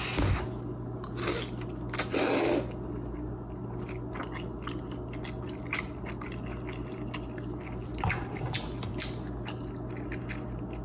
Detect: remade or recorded recorded